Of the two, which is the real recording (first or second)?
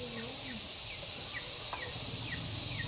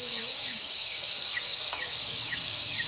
first